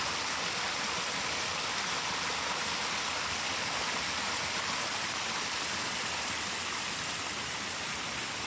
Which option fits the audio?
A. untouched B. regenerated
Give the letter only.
A